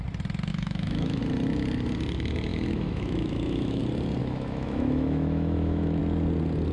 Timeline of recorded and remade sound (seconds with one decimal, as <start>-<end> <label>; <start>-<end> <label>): 0.0-0.5 recorded; 0.5-1.2 remade; 1.2-2.5 recorded; 2.5-3.8 remade; 3.8-4.2 recorded; 4.2-6.0 remade; 6.0-6.7 recorded